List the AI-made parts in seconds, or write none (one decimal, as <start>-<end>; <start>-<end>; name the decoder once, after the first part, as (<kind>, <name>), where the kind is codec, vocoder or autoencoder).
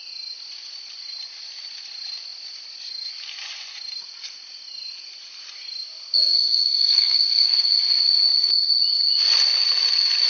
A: 6.2-7.7 (codec, SNAC)